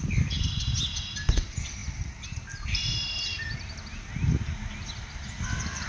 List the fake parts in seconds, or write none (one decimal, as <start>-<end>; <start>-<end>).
none